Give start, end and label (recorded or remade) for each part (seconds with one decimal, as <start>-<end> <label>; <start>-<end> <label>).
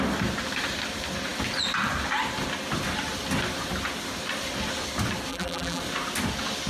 0.0-5.3 recorded; 5.3-5.8 remade; 5.8-6.7 recorded